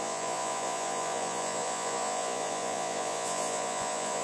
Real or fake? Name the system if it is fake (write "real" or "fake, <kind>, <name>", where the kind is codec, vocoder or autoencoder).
fake, vocoder, Vocos